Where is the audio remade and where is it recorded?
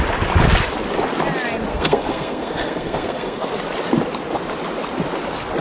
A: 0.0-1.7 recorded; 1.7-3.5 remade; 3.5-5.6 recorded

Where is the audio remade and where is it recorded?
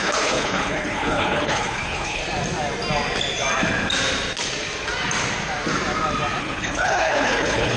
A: 0.0-2.2 remade; 2.2-6.4 recorded; 6.4-7.8 remade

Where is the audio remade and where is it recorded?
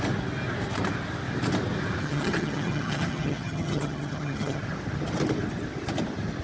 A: 0.0-2.0 recorded; 2.0-4.6 remade; 4.6-6.4 recorded